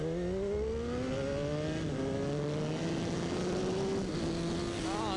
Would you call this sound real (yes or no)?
yes